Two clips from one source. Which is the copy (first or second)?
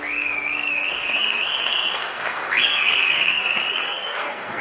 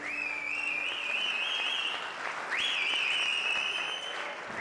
first